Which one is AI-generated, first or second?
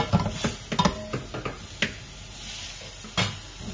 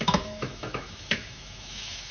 second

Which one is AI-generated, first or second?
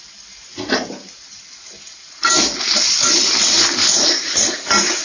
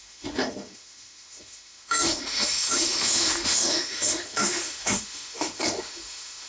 second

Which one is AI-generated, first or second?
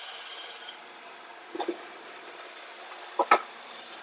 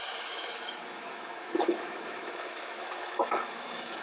second